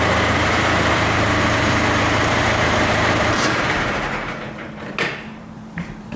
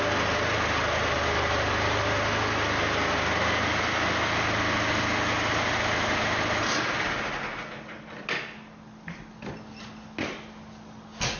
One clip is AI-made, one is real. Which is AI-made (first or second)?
first